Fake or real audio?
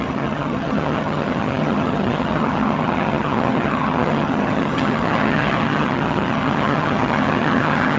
fake